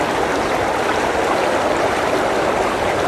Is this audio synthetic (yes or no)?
no